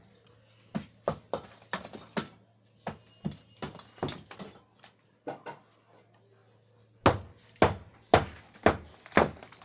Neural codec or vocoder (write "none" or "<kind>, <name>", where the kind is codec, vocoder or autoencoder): none